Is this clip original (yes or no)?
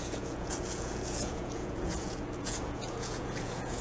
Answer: no